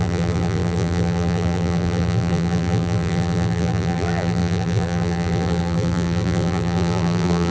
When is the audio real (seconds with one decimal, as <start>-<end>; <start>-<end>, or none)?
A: none